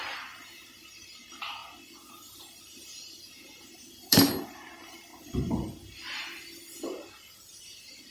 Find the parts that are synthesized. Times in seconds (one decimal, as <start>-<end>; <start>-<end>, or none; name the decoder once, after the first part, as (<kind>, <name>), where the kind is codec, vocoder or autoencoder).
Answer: 0.0-0.4 (vocoder, BigVGAN v2); 0.9-1.6; 2.6-5.1; 7.4-8.1